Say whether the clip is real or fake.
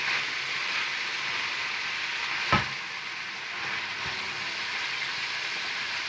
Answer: real